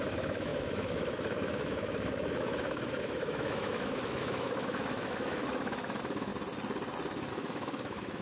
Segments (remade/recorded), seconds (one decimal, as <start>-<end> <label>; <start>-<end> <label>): 0.0-6.3 remade; 6.3-7.3 recorded; 7.3-8.2 remade